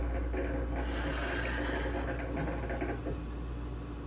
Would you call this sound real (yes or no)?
yes